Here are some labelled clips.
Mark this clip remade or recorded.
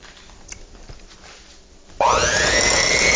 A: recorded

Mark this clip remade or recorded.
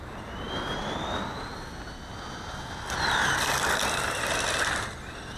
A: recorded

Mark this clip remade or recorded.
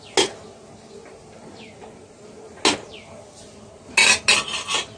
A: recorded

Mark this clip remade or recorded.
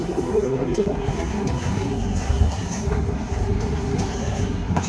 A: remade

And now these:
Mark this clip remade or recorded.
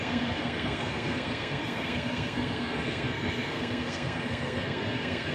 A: remade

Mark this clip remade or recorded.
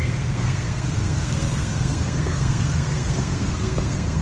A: remade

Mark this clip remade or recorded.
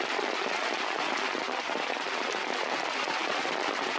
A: recorded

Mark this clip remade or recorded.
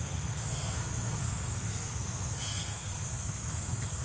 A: remade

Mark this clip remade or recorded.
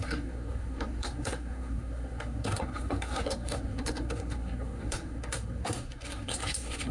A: remade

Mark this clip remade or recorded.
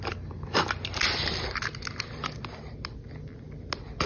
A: recorded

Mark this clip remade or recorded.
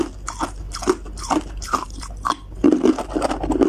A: recorded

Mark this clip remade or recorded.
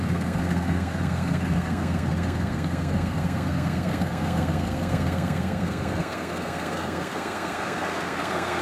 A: remade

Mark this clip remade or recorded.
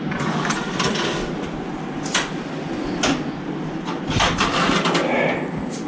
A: recorded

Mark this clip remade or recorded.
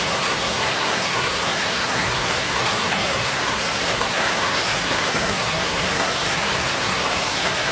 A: remade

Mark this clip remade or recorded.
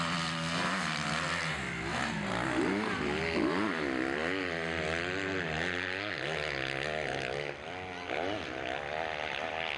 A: recorded